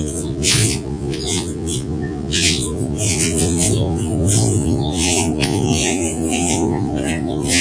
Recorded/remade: remade